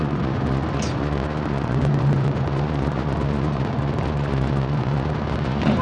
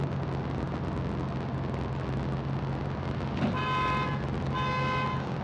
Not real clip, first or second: first